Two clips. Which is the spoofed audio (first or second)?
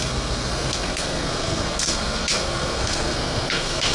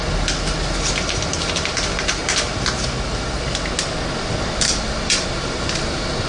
first